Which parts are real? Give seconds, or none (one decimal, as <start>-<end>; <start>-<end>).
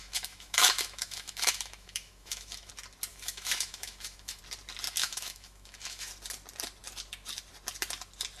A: 2.7-3.1; 4.4-5.0; 6.1-8.4